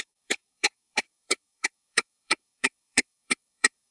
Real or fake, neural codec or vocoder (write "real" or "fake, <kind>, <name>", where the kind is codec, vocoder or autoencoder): fake, codec, DAC